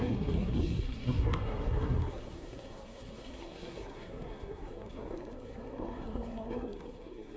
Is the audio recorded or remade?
remade